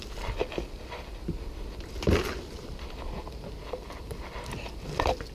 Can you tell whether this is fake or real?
real